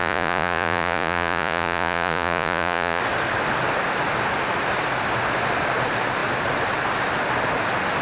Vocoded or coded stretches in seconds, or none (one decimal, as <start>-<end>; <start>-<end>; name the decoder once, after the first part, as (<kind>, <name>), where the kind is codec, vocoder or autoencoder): 0.0-3.0 (vocoder, Vocos)